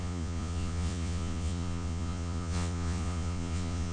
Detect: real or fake fake